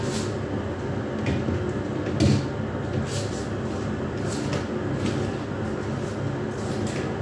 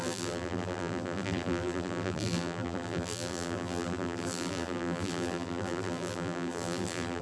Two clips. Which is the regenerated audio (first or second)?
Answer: second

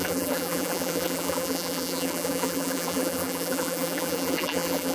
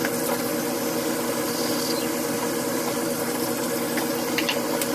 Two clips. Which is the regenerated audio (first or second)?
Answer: first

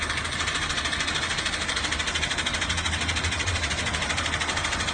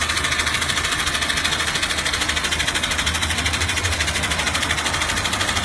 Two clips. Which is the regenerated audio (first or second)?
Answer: first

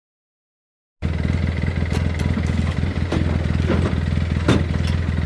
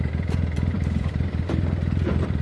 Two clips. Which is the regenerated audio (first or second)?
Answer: second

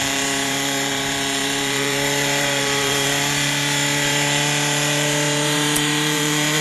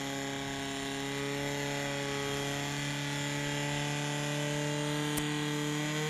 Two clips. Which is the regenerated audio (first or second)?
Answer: first